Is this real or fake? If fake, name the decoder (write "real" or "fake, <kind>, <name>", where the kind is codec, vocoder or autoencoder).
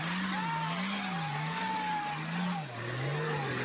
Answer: real